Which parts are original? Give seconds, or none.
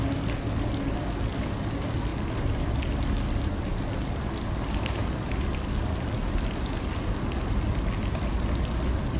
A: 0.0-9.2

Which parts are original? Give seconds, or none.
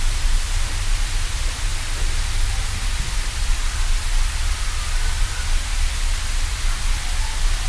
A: 0.0-7.7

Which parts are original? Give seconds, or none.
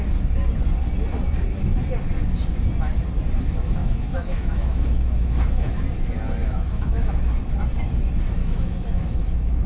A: 0.0-3.8; 5.8-6.4; 7.3-8.4